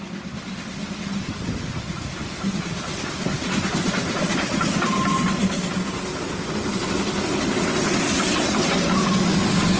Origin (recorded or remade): recorded